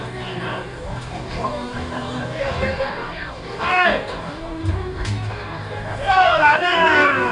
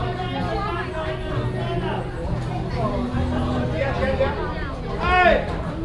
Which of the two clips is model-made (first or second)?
first